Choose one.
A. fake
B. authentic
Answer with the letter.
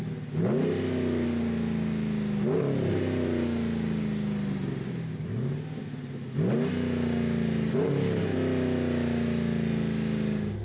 B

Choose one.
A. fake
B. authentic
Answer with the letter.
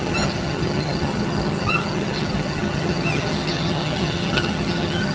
A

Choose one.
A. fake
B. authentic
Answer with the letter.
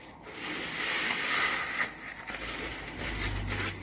B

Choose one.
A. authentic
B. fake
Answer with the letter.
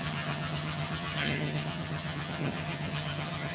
B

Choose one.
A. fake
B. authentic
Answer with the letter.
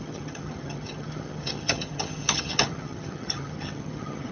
A